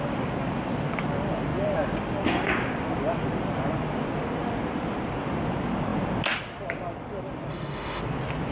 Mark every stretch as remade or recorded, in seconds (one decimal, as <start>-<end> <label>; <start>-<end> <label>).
0.0-7.5 recorded; 7.5-8.0 remade; 8.0-8.5 recorded